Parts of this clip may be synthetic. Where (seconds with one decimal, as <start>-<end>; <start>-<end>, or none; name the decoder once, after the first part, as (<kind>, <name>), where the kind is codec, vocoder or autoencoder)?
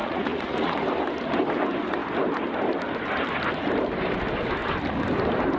0.0-0.8 (vocoder, Vocos)